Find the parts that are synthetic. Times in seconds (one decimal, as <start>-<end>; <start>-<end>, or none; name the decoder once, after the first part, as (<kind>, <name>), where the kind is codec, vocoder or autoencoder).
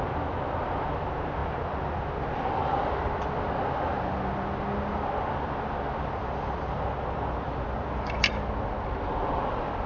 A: none